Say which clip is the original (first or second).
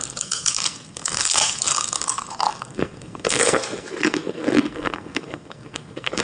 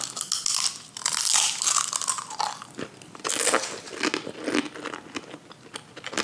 second